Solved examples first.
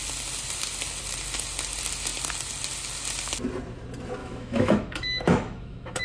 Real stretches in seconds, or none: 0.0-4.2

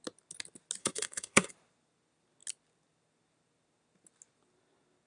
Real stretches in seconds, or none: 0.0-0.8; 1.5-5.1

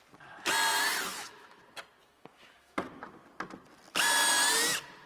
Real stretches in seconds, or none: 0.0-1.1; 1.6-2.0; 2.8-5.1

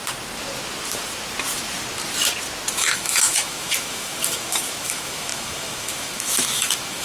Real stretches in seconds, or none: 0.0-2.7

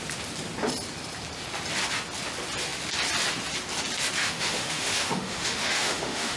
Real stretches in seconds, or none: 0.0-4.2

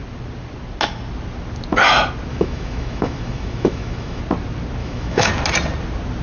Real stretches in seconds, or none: 0.0-2.3; 4.2-4.8; 5.3-6.2